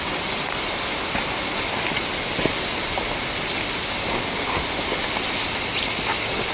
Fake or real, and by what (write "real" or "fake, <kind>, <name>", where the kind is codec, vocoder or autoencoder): real